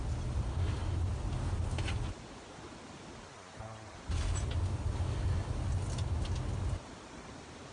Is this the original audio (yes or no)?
yes